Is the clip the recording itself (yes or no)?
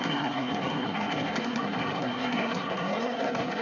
no